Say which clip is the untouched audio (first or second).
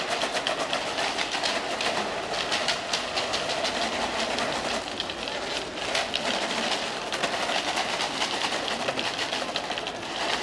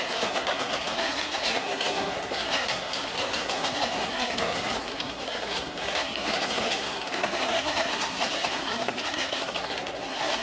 first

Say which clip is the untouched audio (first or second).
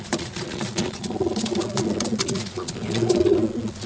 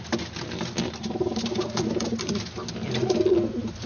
second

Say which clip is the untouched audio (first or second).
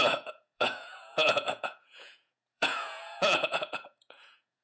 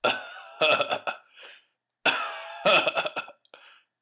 second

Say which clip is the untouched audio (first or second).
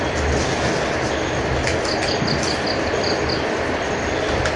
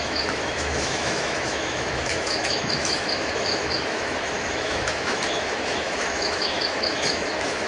first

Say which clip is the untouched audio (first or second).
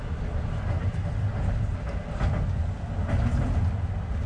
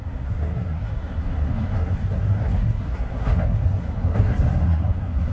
first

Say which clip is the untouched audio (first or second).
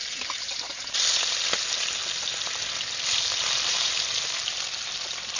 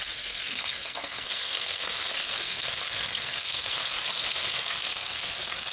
first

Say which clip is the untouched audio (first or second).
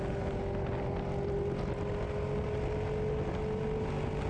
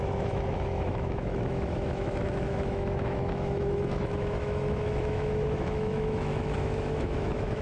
first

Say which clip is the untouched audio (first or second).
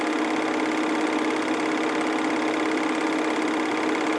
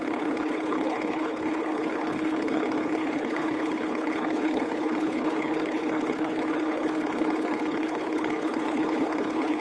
first